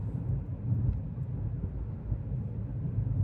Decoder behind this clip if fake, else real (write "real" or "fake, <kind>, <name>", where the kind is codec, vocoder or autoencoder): real